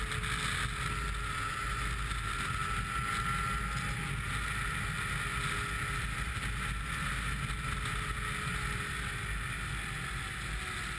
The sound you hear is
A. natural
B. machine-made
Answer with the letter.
A